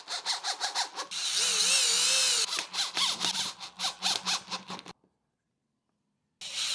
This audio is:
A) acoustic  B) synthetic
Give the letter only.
A